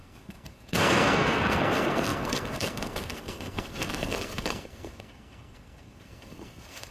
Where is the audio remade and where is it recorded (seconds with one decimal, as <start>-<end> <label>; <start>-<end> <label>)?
0.0-6.9 remade